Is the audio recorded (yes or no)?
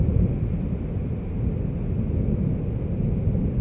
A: yes